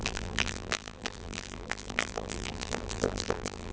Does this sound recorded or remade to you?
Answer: remade